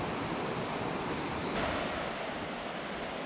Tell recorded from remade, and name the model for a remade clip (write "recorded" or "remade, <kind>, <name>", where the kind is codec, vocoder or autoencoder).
recorded